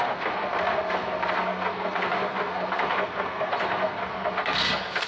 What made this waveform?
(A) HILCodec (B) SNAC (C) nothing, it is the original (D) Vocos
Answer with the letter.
B